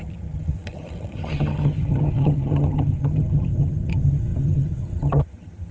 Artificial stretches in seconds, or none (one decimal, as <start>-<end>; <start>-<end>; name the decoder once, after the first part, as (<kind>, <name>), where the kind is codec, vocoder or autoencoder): 0.0-5.7 (vocoder, HiFi-GAN)

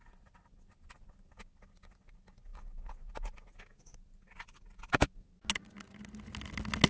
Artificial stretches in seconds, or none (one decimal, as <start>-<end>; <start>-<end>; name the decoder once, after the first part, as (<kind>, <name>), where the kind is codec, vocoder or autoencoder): none